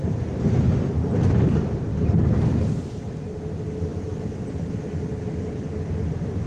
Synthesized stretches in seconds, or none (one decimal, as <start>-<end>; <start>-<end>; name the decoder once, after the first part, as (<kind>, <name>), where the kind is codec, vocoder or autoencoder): none